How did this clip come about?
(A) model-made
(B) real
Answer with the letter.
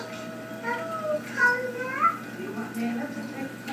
B